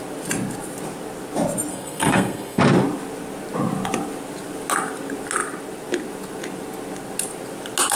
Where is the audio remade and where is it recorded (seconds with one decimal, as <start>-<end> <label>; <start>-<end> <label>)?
0.0-1.7 recorded; 1.7-2.6 remade; 2.6-8.0 recorded